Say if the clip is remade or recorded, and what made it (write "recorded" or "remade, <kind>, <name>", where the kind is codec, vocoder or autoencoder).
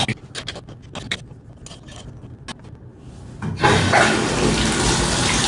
recorded